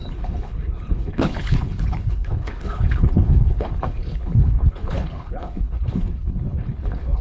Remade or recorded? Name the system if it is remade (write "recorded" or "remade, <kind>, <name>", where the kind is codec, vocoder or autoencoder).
remade, codec, HILCodec